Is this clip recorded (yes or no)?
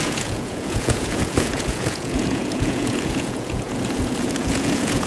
no